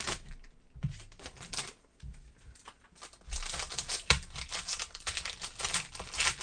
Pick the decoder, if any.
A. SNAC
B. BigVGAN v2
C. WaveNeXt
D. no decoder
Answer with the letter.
D